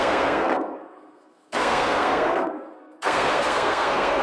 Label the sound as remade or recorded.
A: remade